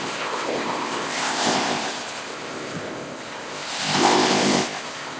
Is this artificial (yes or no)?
yes